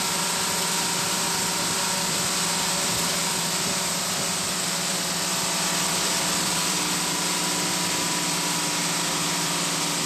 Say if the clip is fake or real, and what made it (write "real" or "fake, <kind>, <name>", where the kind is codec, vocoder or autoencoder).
real